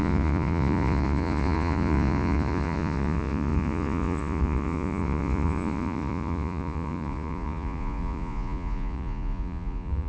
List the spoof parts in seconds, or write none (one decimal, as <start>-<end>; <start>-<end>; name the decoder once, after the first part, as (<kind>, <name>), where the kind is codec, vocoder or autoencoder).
0.0-10.1 (vocoder, Vocos)